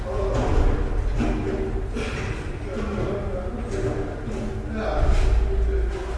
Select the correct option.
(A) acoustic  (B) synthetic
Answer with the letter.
A